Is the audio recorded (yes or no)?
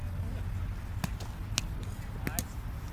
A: yes